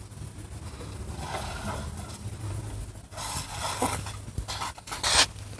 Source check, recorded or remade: recorded